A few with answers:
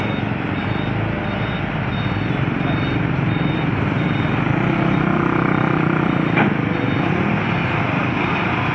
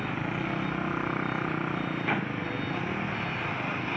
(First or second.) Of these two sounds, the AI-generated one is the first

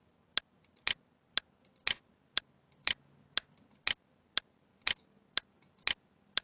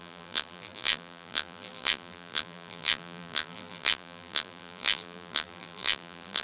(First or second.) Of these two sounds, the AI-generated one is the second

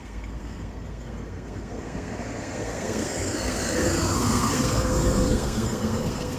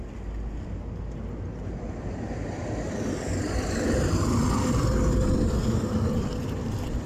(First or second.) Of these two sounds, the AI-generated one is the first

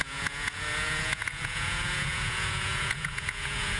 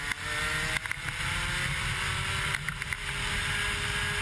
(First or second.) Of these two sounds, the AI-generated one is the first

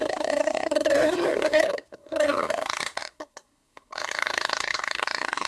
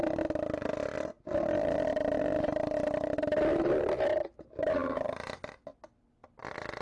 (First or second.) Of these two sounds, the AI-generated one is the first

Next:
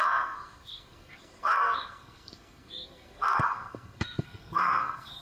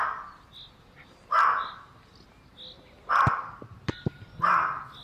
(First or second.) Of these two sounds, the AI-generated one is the first